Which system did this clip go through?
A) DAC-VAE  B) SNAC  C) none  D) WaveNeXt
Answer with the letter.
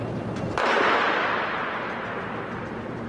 C